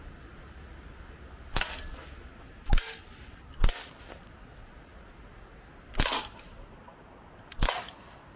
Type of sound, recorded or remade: recorded